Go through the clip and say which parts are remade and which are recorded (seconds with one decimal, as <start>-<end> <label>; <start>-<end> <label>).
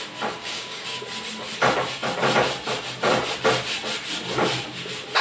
0.0-0.4 recorded; 0.4-1.0 remade; 1.0-5.2 recorded